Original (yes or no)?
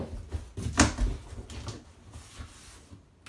yes